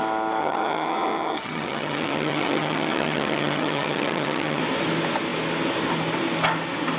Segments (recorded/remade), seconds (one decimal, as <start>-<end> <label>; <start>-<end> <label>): 0.0-0.4 recorded; 0.4-4.6 remade; 4.6-7.0 recorded